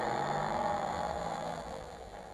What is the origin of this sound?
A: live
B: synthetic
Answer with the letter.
B